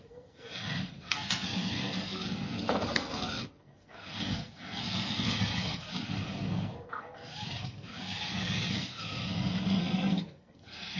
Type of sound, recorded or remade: remade